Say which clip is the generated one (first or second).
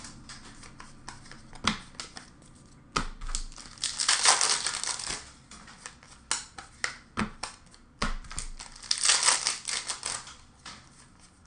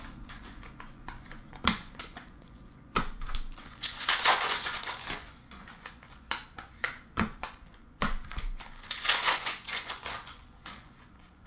second